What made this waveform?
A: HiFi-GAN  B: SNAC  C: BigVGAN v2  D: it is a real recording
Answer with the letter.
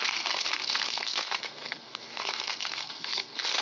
B